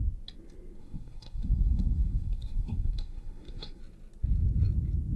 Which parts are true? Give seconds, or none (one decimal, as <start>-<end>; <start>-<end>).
0.0-0.8; 3.8-5.2